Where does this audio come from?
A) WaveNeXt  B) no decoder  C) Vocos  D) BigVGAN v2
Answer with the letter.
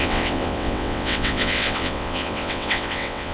A